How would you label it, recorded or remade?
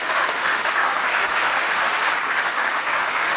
remade